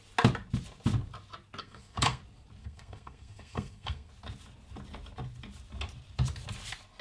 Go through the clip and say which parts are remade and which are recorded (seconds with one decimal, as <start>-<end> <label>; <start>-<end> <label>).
0.0-1.6 recorded; 1.6-2.2 remade; 2.2-2.6 recorded; 2.6-4.1 remade; 4.1-7.0 recorded